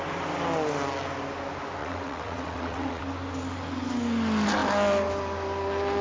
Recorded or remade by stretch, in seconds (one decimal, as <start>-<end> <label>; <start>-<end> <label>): 0.0-1.8 recorded; 1.8-3.0 remade; 3.0-6.0 recorded